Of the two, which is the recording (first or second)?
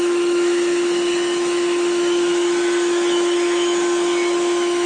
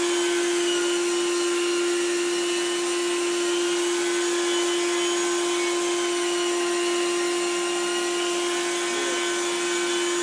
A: second